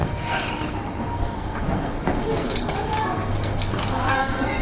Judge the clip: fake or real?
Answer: fake